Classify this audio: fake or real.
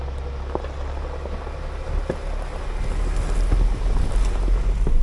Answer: real